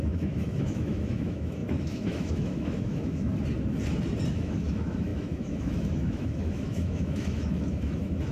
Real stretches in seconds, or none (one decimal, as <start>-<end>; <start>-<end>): 3.3-4.3